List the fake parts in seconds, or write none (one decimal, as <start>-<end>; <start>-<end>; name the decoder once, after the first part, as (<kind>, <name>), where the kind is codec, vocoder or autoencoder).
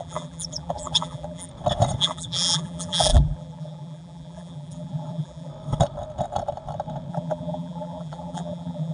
0.0-1.5 (vocoder, BigVGAN v2); 2.0-5.5; 7.1-8.9